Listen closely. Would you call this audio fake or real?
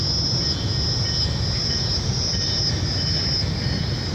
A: real